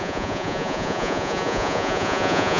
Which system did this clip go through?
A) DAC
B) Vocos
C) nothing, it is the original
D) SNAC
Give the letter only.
B